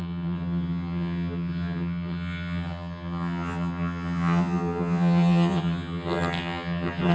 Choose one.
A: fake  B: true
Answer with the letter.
A